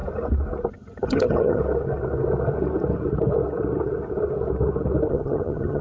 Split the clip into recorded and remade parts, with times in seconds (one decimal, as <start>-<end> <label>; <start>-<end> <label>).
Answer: 0.0-0.7 recorded; 0.7-1.6 remade; 1.6-5.1 recorded; 5.1-5.8 remade